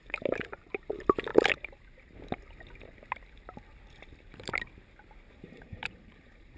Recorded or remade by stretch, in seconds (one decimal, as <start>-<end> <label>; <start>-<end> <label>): 0.0-1.3 remade; 1.3-5.3 recorded; 5.3-6.6 remade